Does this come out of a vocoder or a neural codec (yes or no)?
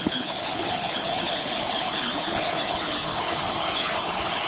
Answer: yes